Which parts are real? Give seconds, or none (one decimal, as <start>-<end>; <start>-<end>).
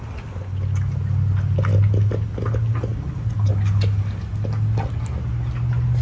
0.0-6.0